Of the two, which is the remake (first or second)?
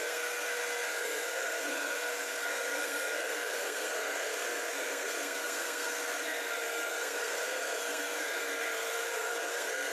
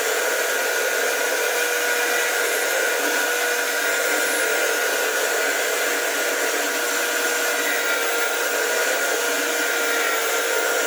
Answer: first